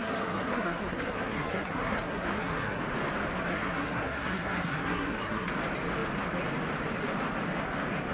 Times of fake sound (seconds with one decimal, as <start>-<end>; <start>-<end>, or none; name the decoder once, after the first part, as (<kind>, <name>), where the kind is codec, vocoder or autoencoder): 0.0-2.8 (codec, SNAC); 3.5-5.5